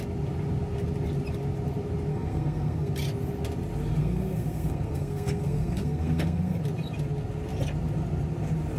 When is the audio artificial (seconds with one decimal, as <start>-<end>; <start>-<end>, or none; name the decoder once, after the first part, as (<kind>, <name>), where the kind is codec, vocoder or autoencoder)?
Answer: 2.1-2.9 (codec, SNAC); 4.0-6.6